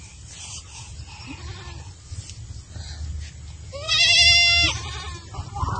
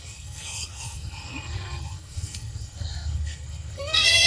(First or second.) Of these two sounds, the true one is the first